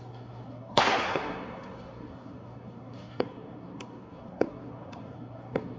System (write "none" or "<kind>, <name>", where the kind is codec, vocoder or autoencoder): codec, SNAC